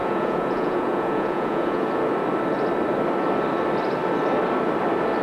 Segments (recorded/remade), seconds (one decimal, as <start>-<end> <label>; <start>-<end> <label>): 0.0-1.9 remade; 1.9-5.2 recorded